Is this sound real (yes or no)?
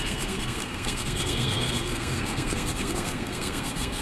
no